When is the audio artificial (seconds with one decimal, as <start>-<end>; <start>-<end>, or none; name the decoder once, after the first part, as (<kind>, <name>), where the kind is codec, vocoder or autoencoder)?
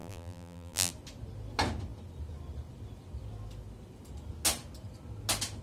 0.0-0.9 (vocoder, BigVGAN v2)